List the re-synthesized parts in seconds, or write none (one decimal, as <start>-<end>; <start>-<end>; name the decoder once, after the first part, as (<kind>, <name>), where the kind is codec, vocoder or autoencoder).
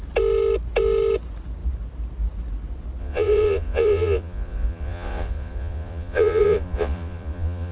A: 3.0-7.7 (vocoder, Vocos)